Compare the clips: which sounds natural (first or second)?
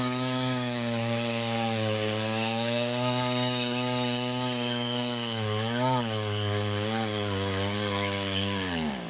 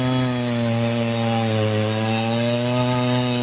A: second